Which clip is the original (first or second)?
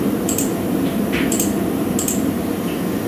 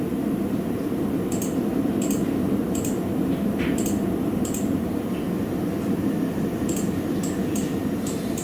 first